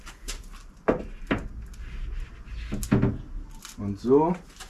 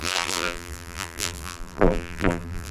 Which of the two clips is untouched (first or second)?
first